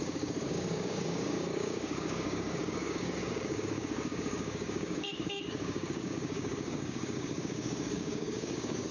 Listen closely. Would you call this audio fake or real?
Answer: fake